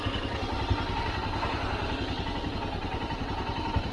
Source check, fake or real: real